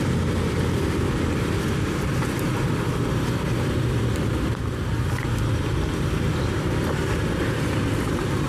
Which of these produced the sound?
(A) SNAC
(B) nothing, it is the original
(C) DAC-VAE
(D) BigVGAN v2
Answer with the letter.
D